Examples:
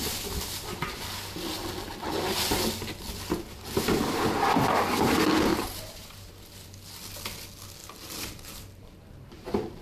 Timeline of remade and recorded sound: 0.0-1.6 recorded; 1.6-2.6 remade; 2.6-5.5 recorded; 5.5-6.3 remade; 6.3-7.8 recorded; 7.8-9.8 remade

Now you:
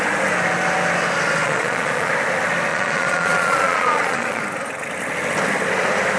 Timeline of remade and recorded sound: 0.0-1.4 recorded; 1.4-2.1 remade; 2.1-2.7 recorded; 2.7-4.4 remade; 4.4-6.2 recorded

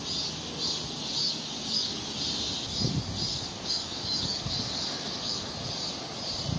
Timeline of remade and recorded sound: 0.0-1.2 recorded; 1.2-2.0 remade; 2.0-3.3 recorded; 3.3-5.5 remade; 5.5-6.6 recorded